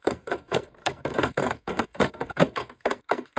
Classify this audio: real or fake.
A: fake